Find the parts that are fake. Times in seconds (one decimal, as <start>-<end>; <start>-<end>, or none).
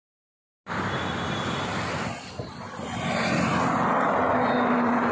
none